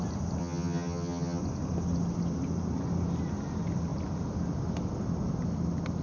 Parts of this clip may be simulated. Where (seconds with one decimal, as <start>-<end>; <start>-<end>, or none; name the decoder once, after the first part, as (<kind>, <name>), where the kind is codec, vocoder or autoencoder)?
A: 0.4-1.4 (vocoder, HiFi-GAN)